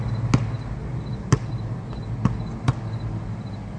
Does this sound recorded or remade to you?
recorded